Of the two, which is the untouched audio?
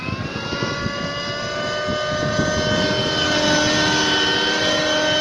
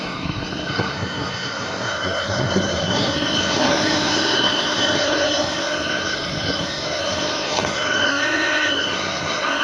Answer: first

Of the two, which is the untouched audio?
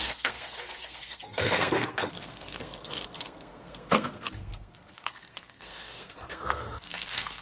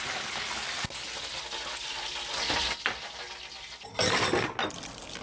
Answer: second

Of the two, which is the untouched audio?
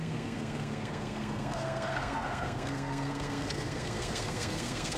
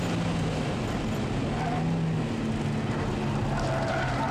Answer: second